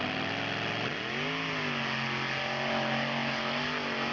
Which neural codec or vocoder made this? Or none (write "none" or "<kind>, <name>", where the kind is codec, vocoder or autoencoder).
none